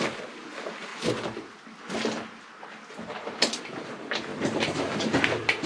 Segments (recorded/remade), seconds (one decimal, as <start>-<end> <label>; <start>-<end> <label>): 0.0-5.7 recorded